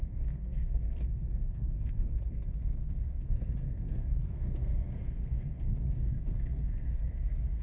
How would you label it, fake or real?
fake